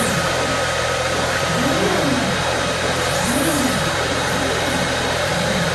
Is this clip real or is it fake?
fake